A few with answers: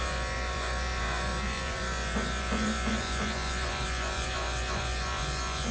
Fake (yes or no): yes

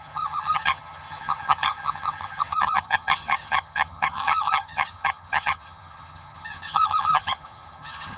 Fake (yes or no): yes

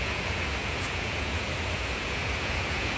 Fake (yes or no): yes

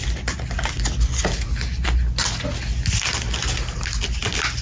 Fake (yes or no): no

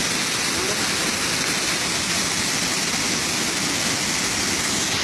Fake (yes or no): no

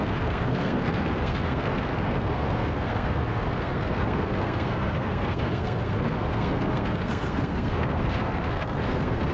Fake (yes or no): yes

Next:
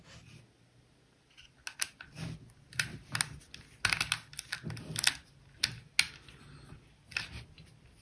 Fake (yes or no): no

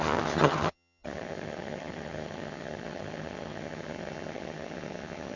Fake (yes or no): yes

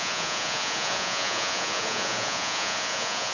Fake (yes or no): yes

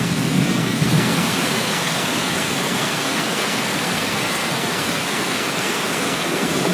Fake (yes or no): yes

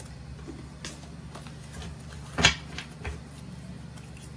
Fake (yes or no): no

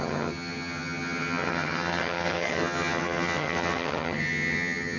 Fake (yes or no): yes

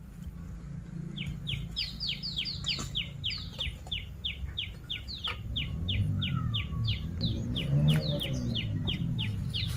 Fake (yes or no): no